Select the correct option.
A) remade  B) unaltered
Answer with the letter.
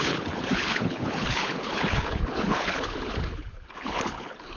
A